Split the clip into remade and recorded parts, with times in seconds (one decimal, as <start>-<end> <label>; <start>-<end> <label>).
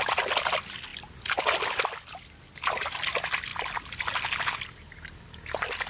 0.0-5.9 recorded